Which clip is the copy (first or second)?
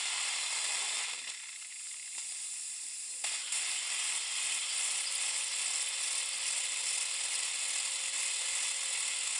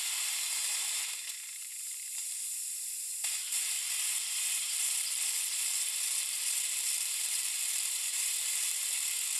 second